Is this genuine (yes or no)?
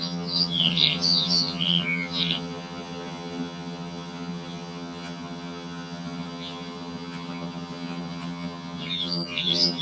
no